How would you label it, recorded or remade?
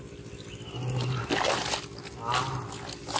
recorded